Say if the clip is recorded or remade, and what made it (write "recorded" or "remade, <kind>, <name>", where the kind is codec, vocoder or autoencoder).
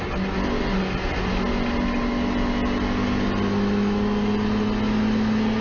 recorded